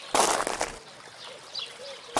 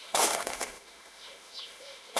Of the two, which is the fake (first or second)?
second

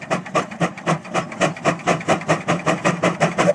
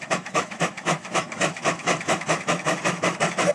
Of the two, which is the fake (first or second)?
second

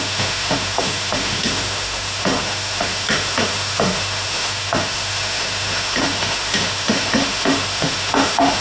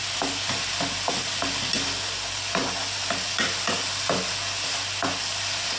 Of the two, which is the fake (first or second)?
first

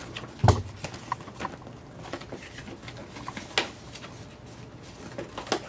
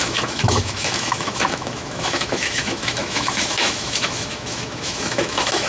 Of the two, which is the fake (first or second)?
second